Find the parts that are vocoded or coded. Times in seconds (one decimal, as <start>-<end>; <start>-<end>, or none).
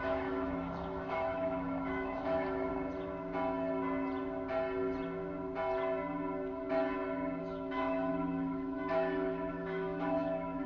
0.0-2.7; 7.4-10.7